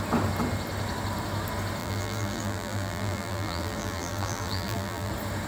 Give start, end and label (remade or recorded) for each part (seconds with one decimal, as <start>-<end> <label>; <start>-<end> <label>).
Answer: 0.0-1.8 recorded; 1.8-5.1 remade; 5.1-5.5 recorded